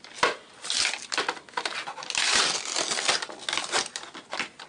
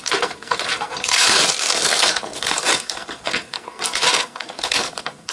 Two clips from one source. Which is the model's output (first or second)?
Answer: second